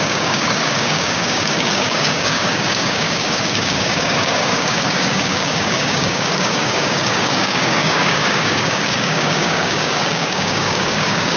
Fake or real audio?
fake